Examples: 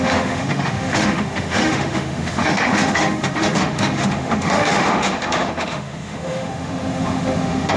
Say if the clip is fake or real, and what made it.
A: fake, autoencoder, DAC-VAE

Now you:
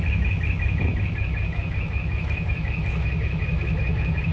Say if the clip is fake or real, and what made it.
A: fake, autoencoder, DAC-VAE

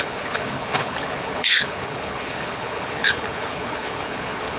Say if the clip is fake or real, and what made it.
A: fake, codec, HILCodec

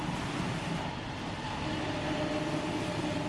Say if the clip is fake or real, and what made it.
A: real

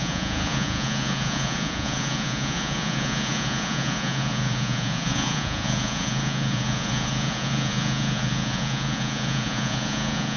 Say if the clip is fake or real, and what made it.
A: fake, vocoder, Vocos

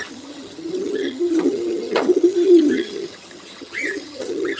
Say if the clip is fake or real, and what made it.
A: fake, vocoder, HiFi-GAN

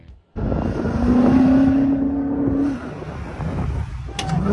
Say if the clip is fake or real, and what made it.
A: real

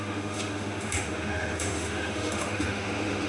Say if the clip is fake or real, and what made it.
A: fake, autoencoder, DAC-VAE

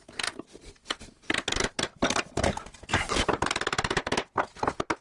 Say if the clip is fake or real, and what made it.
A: real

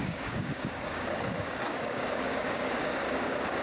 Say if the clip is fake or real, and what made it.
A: fake, codec, DAC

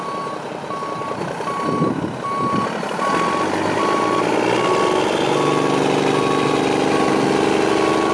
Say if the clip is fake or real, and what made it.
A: real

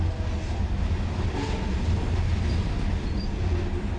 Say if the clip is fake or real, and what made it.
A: real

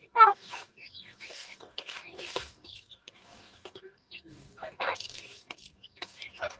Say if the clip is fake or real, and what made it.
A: fake, codec, DAC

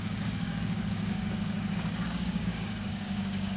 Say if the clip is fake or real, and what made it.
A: fake, codec, DAC